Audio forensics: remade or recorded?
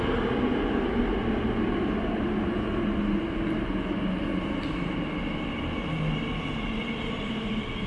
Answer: recorded